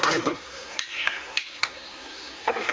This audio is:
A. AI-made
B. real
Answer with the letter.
A